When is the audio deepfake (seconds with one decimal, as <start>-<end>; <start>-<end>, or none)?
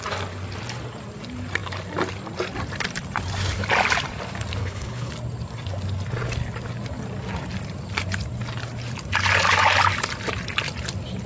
4.6-5.1